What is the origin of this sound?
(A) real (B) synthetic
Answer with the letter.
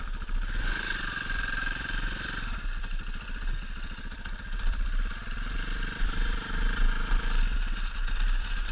B